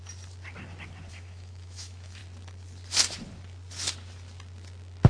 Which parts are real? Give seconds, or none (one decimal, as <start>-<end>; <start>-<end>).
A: 0.0-1.1; 2.2-5.1